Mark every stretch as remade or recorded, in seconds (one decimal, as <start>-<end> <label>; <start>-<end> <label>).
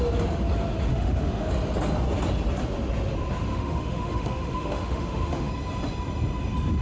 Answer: 0.0-0.9 recorded; 0.9-1.5 remade; 1.5-3.5 recorded; 3.5-5.5 remade; 5.5-6.8 recorded